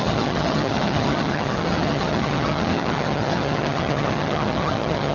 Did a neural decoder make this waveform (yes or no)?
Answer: yes